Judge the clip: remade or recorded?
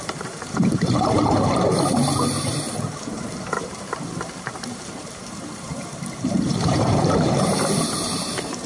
remade